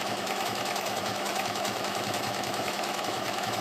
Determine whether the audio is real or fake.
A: fake